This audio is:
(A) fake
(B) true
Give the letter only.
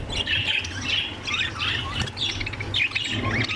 B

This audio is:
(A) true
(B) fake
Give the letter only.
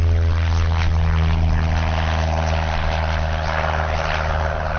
A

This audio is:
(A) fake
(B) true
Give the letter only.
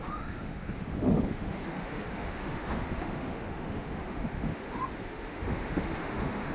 A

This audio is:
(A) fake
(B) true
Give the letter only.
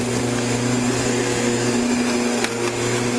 B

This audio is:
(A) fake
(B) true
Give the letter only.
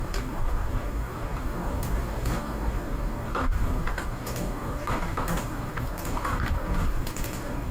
A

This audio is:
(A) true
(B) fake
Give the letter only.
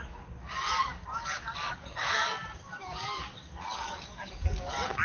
B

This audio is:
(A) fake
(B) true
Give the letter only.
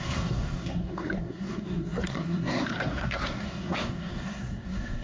A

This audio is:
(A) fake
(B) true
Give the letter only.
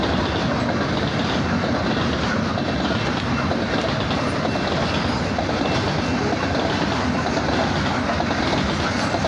B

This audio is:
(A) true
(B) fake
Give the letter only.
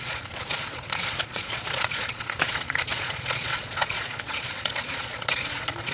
B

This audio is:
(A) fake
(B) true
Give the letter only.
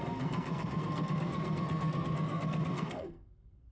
A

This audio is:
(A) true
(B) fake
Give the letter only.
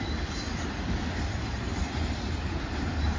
A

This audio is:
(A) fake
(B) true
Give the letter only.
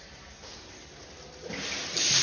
B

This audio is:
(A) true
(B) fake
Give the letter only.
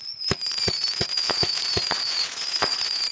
B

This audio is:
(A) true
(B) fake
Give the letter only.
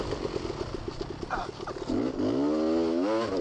A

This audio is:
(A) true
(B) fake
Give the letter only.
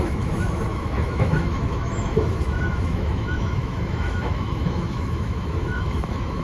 B